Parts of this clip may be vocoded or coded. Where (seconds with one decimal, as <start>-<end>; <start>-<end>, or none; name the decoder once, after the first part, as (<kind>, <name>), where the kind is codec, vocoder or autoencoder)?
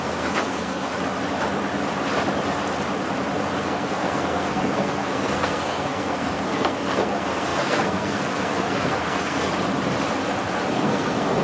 0.0-0.9 (codec, SNAC); 3.6-9.5; 10.7-11.4